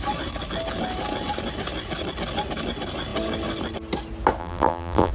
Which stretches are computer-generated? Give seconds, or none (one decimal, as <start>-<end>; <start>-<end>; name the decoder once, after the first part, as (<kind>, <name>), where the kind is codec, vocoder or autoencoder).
4.4-5.1 (vocoder, BigVGAN v2)